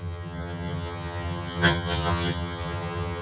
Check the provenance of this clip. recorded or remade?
remade